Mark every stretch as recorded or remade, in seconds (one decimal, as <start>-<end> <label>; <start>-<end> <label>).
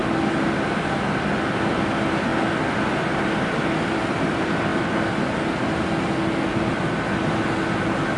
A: 0.0-8.2 recorded